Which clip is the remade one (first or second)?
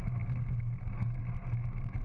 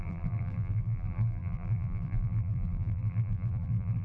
second